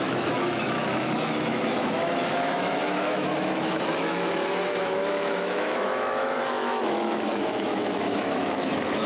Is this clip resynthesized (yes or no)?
yes